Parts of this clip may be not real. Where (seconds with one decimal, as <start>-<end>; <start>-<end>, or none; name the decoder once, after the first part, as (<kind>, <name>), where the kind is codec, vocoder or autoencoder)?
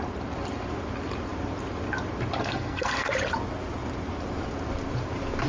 2.4-3.1 (codec, SNAC)